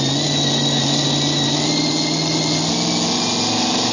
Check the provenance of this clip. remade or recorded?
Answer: recorded